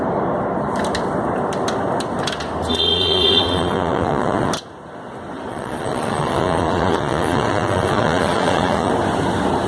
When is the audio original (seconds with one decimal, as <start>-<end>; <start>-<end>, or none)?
0.0-2.7; 4.5-5.5; 8.9-9.7